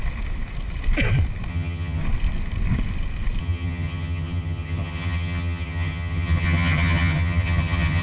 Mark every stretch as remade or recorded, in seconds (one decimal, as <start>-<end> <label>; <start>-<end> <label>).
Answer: 0.0-1.5 recorded; 1.5-2.0 remade; 2.0-3.4 recorded; 3.4-8.0 remade